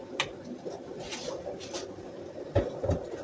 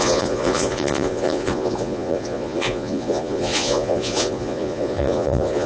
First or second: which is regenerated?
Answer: second